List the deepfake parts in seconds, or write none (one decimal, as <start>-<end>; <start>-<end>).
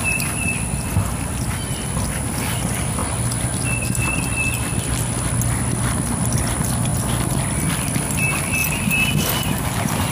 8.6-10.1